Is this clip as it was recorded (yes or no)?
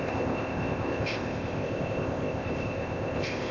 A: no